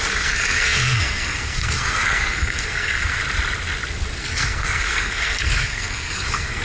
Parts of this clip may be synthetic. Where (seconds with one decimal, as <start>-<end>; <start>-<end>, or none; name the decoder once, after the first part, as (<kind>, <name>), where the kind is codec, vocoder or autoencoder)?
0.0-3.2 (codec, SNAC); 4.2-6.6